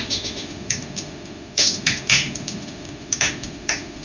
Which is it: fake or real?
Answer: fake